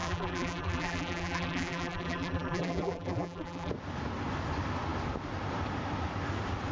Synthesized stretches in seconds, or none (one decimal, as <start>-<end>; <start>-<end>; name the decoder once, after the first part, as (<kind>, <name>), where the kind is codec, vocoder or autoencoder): 0.0-3.7 (vocoder, BigVGAN v2)